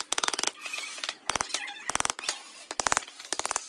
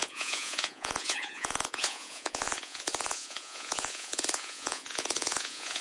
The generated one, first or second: second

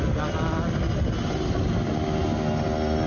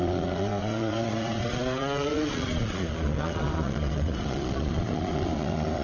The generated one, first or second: second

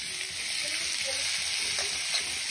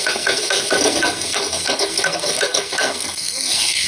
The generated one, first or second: second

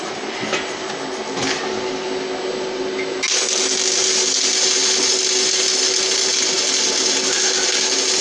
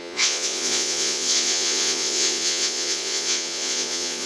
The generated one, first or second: second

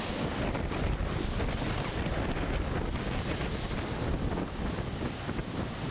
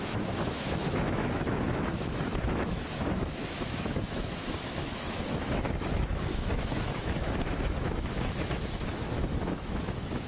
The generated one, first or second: second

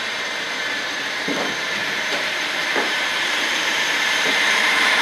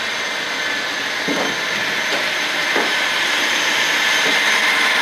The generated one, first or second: first